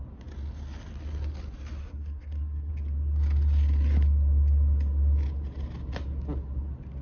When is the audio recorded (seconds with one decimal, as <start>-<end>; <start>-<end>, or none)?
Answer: 0.0-1.8; 2.7-7.0